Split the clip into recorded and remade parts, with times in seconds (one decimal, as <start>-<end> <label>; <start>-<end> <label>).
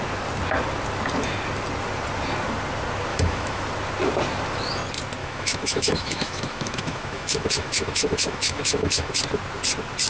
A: 0.0-3.1 recorded; 3.1-3.6 remade; 3.6-5.2 recorded; 5.2-9.1 remade; 9.1-10.1 recorded